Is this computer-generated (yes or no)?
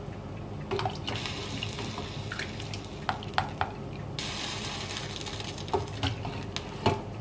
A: no